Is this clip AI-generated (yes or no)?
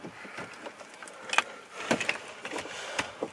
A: no